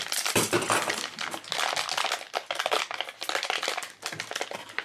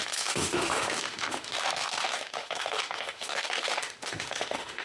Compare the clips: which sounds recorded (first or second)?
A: first